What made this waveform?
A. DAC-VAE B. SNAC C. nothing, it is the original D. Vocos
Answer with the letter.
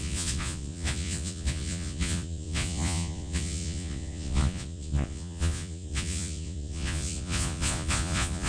D